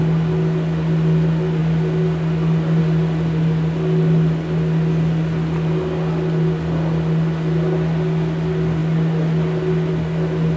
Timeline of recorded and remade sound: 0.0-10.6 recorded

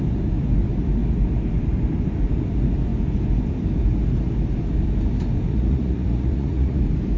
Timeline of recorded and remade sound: 0.0-5.5 recorded; 5.5-6.8 remade; 6.8-7.2 recorded

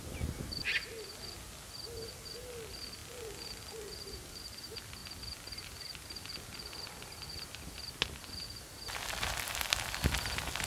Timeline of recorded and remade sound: 0.0-10.7 recorded